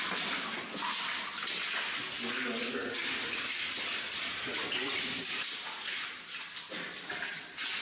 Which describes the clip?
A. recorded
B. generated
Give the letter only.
A